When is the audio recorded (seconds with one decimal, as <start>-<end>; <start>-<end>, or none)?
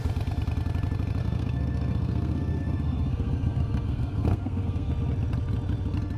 0.0-1.2; 4.9-6.2